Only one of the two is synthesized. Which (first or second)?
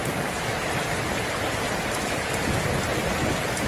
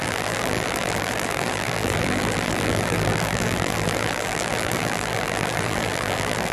second